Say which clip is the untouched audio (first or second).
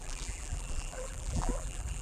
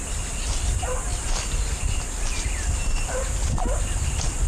second